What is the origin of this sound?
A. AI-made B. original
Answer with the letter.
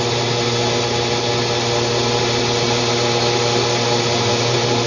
B